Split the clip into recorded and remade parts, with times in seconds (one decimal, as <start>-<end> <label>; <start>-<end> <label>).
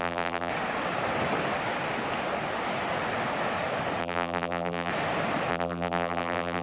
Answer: 0.0-0.5 remade; 0.5-4.0 recorded; 4.0-4.9 remade; 4.9-5.5 recorded; 5.5-6.6 remade